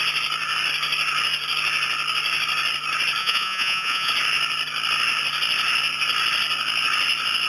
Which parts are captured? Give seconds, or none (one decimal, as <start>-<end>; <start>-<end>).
0.0-3.2; 4.1-7.5

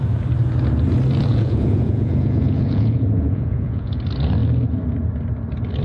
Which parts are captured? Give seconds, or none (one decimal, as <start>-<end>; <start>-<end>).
0.0-1.3; 4.0-5.8

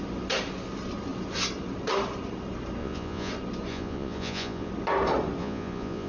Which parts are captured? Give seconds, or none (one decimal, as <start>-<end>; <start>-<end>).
0.0-2.8; 3.3-3.7; 4.7-5.4

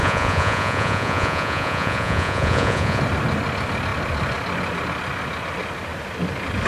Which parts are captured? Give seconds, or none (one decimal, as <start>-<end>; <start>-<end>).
3.0-6.7

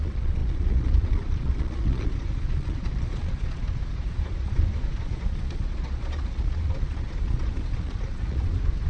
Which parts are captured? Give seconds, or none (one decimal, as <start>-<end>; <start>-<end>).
none

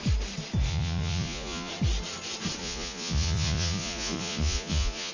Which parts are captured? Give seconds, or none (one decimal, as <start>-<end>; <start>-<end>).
0.0-0.7; 1.7-2.6